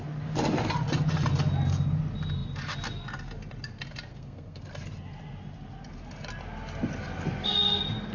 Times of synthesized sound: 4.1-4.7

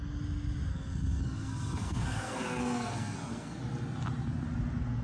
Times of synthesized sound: 0.7-3.6

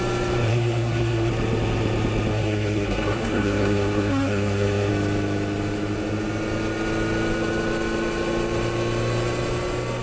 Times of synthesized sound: 0.5-1.3; 2.3-4.9

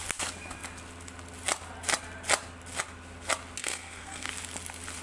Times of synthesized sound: 3.6-4.3

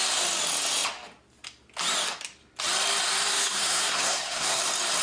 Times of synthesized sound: 3.3-4.6

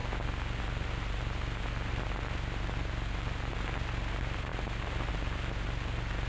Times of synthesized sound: none

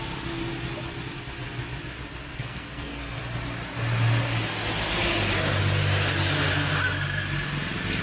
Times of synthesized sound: 2.3-3.2